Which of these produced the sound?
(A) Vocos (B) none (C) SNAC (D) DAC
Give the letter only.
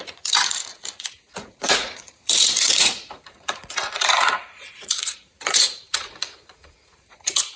A